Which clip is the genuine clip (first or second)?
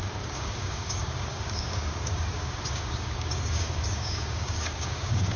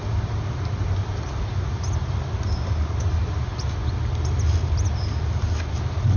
second